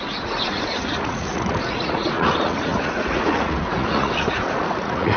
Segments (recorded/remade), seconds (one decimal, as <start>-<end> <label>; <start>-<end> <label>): 0.0-5.2 remade